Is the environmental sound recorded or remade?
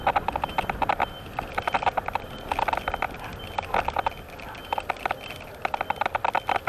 recorded